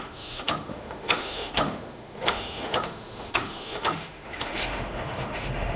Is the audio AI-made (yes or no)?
yes